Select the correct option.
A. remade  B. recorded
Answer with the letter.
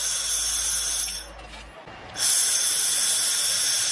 B